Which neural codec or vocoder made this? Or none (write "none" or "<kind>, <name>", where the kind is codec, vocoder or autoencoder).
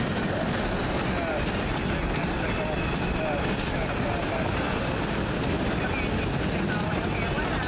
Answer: none